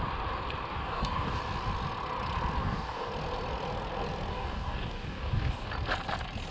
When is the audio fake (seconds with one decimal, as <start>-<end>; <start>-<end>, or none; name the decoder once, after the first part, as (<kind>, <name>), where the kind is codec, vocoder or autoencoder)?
0.7-1.4 (codec, DAC); 2.6-3.1; 4.3-5.7